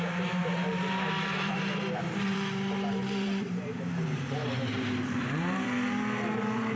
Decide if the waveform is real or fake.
fake